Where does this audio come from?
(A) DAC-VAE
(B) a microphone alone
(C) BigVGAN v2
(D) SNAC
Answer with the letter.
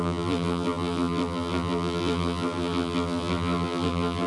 C